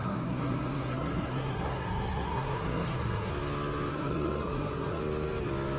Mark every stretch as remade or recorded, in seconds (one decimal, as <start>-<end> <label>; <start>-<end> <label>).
0.0-3.3 remade; 3.3-3.9 recorded; 3.9-5.0 remade; 5.0-5.8 recorded